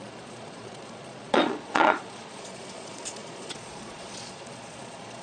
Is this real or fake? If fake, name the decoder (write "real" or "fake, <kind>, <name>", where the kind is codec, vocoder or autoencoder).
fake, vocoder, Vocos